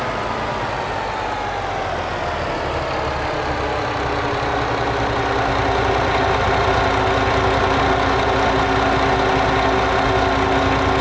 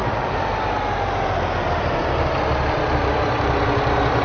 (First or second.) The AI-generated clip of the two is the second